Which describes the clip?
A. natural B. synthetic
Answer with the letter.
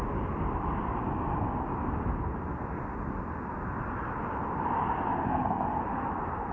A